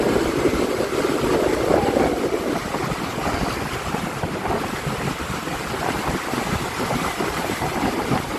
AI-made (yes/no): no